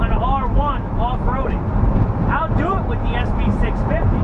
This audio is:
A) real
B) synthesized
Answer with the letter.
B